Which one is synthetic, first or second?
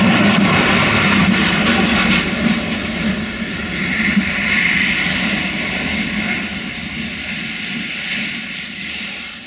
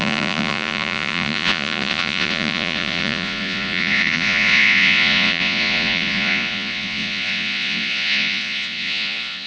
second